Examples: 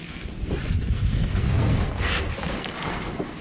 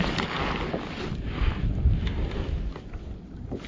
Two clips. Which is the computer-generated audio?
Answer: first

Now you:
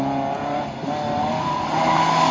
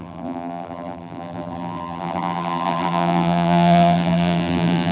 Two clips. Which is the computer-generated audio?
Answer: second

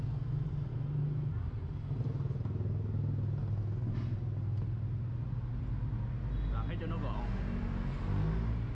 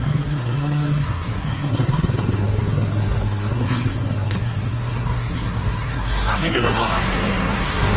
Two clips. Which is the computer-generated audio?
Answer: second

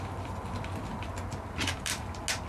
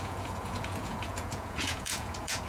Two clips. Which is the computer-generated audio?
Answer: second